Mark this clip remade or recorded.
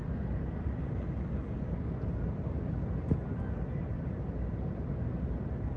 recorded